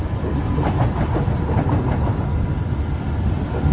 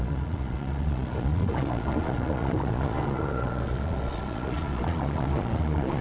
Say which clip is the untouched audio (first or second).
first